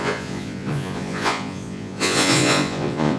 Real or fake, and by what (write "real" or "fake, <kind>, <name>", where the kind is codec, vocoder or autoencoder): fake, vocoder, Vocos